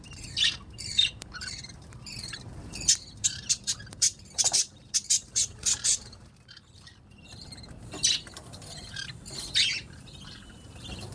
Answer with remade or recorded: remade